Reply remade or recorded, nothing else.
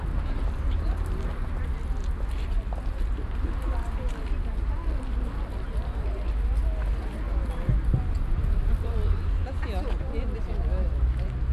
recorded